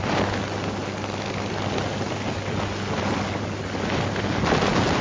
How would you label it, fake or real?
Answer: real